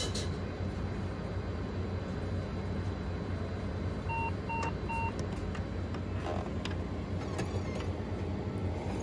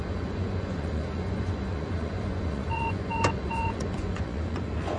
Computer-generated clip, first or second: second